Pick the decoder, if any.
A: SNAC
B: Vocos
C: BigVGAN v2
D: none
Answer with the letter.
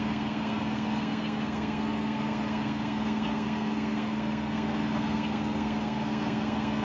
A